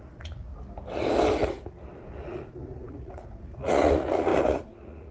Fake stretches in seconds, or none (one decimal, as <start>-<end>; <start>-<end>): 0.0-0.5; 2.0-5.1